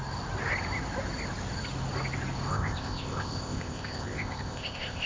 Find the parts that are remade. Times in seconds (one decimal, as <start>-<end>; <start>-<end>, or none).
2.5-5.1